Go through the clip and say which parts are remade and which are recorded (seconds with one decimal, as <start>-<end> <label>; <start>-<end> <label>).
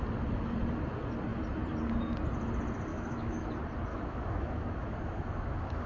0.0-2.9 recorded; 2.9-3.4 remade; 3.4-3.9 recorded; 3.9-5.9 remade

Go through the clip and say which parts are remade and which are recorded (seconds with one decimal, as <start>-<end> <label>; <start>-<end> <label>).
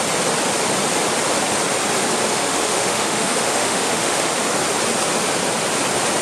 0.0-2.3 recorded; 2.3-4.3 remade; 4.3-6.2 recorded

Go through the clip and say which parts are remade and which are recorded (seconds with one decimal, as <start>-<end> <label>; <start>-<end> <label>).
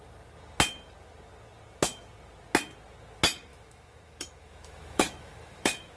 0.0-3.5 recorded; 3.5-6.0 remade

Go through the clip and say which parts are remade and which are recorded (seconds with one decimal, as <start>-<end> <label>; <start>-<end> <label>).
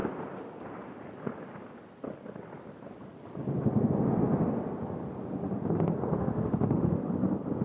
0.0-6.2 recorded; 6.2-7.1 remade; 7.1-7.6 recorded